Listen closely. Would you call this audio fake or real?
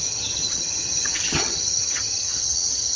fake